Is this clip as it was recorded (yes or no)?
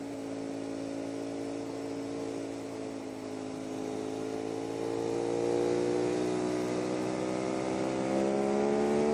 yes